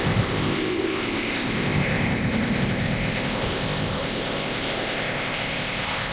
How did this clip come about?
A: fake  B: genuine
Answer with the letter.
A